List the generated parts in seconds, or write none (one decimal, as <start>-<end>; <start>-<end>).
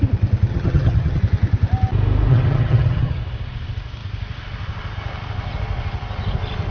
0.5-1.2; 2.3-3.2